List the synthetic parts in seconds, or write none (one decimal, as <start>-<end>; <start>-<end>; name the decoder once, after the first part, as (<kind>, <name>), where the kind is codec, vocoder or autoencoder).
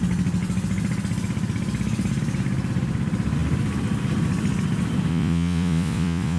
5.1-6.4 (vocoder, Vocos)